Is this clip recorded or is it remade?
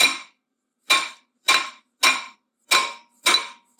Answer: recorded